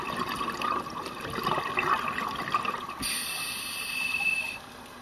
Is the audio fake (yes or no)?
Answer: yes